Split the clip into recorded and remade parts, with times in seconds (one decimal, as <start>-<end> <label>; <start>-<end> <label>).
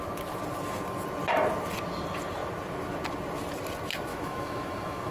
0.0-4.1 recorded; 4.1-5.1 remade